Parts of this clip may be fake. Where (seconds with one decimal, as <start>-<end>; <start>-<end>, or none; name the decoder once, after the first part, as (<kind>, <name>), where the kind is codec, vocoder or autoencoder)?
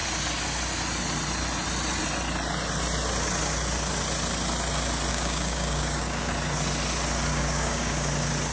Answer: 5.1-6.3 (codec, DAC); 7.3-8.1